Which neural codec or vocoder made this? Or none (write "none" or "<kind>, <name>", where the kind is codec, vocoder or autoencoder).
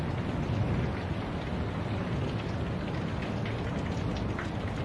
none